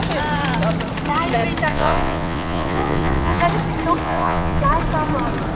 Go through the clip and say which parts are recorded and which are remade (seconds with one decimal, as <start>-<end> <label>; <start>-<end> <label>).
0.0-1.7 recorded; 1.7-3.4 remade; 3.4-4.0 recorded; 4.0-4.6 remade; 4.6-5.5 recorded